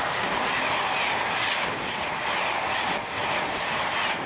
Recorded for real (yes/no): yes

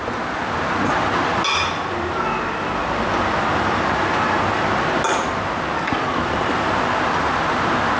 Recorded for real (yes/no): yes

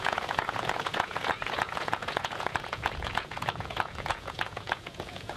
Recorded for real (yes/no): no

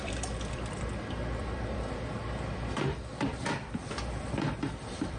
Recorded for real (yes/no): no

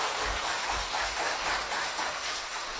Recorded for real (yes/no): no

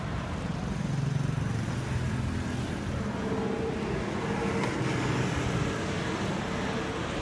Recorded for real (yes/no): yes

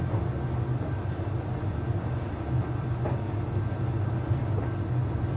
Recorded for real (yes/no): yes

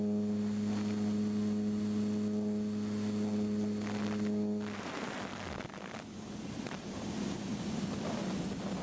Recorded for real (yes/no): yes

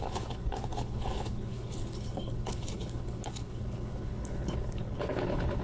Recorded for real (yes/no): no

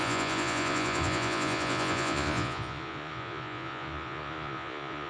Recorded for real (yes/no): no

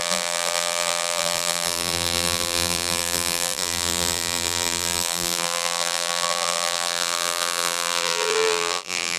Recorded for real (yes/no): no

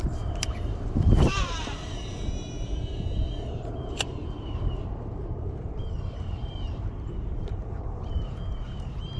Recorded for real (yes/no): no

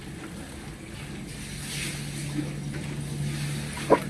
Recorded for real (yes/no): yes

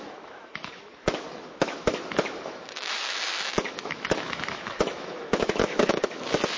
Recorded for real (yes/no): no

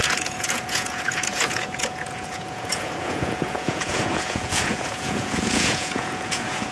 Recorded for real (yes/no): no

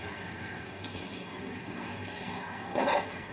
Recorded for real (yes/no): no